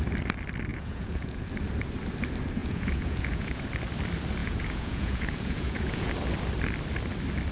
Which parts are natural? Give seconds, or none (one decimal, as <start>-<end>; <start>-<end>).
0.0-0.7; 1.5-2.6; 3.6-4.4; 6.1-7.5